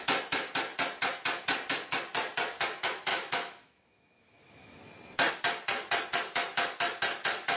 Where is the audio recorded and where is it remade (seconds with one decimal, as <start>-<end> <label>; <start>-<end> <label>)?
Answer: 0.0-3.1 recorded; 3.1-4.8 remade; 4.8-7.6 recorded

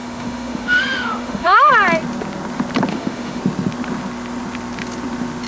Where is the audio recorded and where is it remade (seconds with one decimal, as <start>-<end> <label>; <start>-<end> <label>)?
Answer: 0.0-1.7 remade; 1.7-2.9 recorded; 2.9-3.4 remade; 3.4-5.5 recorded